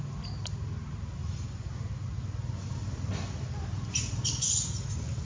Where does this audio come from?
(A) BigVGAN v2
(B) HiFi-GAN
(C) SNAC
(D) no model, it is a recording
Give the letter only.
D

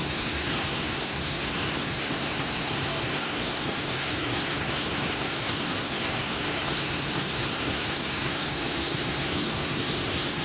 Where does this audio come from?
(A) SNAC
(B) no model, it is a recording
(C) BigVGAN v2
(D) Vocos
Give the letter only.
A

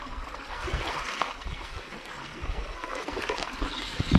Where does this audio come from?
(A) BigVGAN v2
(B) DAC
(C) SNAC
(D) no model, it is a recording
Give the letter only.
C